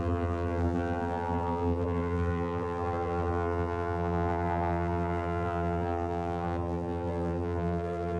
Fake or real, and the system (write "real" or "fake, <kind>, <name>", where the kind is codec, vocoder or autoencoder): fake, vocoder, BigVGAN v2